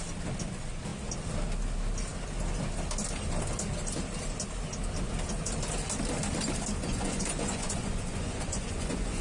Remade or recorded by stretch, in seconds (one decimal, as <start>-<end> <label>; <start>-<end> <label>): 0.0-6.8 recorded; 6.8-9.2 remade